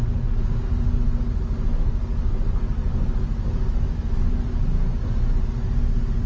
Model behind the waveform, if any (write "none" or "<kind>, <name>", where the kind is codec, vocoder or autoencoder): none